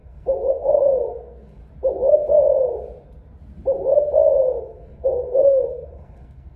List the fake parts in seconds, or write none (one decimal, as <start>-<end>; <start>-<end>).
0.0-1.6; 4.6-6.6